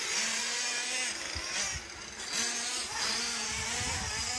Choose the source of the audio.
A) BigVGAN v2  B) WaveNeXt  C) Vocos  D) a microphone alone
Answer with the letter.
D